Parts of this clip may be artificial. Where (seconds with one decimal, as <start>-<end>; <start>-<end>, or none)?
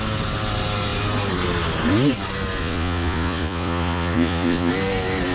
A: 2.6-4.7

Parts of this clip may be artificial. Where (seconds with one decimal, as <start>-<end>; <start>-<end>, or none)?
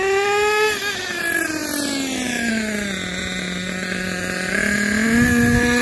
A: none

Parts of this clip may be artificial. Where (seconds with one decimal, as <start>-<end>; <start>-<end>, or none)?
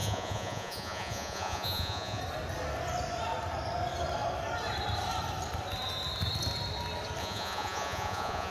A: 0.0-2.2; 7.2-8.5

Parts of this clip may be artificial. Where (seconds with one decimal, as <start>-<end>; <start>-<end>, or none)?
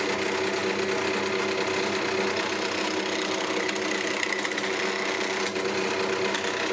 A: none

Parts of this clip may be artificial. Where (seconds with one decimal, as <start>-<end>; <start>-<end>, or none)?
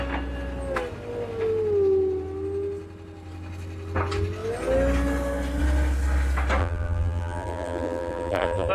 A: 6.6-8.7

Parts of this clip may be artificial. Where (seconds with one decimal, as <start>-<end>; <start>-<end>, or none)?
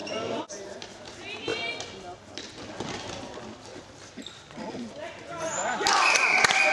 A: 0.0-1.1; 3.7-6.2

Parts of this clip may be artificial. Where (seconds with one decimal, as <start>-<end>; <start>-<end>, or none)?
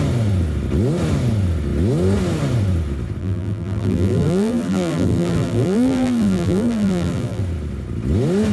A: 3.2-7.4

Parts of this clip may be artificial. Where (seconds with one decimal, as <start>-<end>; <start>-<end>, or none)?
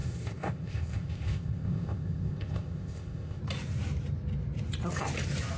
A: 0.0-3.4